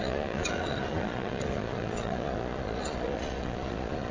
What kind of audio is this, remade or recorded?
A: remade